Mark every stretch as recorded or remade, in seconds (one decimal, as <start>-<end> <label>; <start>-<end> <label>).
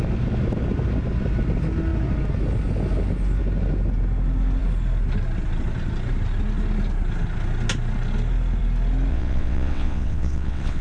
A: 0.0-9.1 recorded; 9.1-10.8 remade